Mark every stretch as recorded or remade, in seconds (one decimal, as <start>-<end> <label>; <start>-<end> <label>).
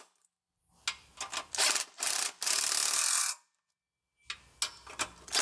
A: 0.0-5.4 recorded